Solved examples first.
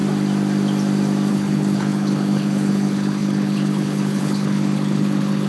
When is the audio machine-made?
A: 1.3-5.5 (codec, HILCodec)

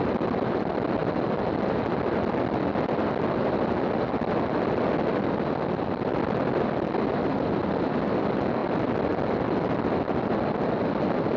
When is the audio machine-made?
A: none

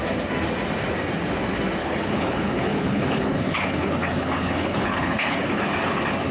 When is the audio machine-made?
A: 1.8-5.6 (codec, HILCodec)

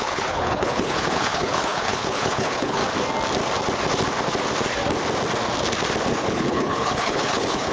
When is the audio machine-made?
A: 0.0-2.8 (codec, HILCodec); 6.1-7.7